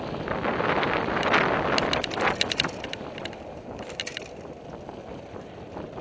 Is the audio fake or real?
real